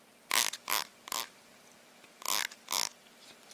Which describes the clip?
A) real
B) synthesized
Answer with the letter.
A